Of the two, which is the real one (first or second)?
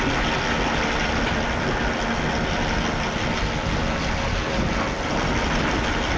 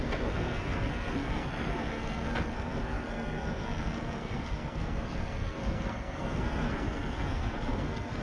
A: first